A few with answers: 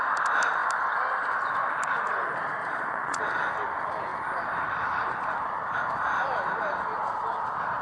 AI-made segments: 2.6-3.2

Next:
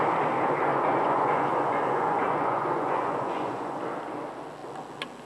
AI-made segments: 0.7-3.8

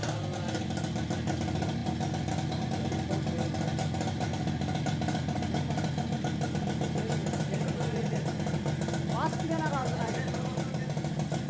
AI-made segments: 9.8-10.3

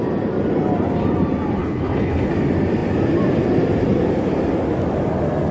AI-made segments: 1.6-2.3

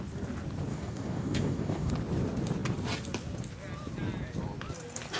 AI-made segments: 0.7-1.9

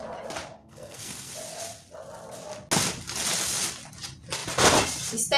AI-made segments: 0.6-1.3